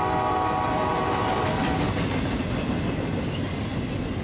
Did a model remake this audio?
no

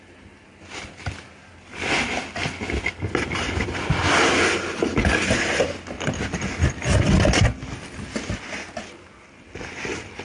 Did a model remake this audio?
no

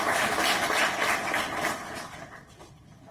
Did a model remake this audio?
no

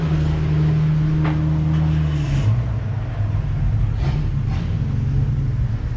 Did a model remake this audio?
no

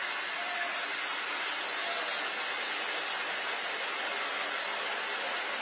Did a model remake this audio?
no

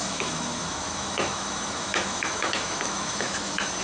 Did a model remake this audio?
yes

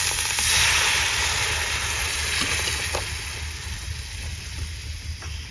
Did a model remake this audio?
no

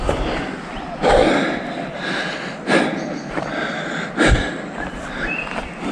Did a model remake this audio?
no